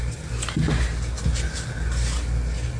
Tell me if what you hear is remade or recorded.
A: recorded